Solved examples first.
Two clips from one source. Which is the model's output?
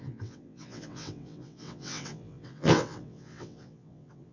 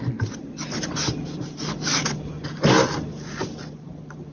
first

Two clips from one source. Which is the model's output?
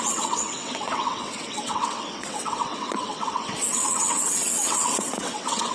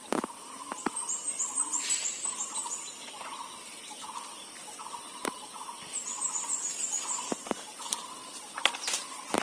first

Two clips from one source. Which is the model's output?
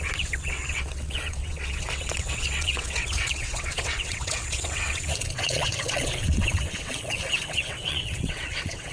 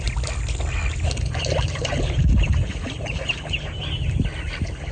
first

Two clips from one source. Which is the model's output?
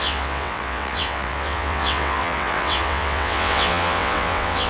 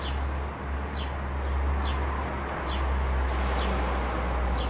first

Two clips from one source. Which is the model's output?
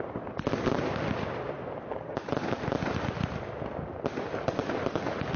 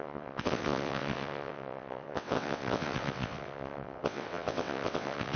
second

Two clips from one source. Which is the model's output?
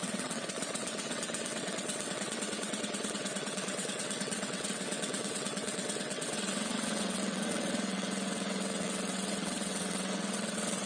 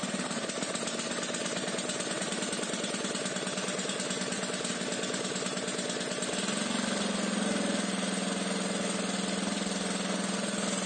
first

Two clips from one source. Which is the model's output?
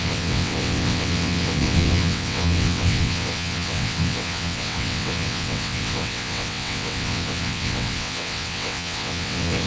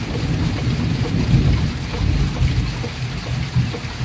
first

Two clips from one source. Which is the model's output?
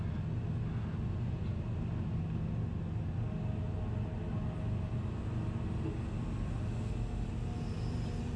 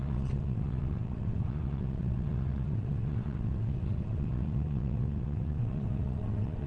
second